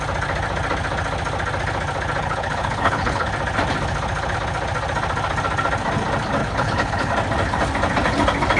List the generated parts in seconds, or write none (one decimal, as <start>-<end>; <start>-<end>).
2.2-3.3; 6.4-7.1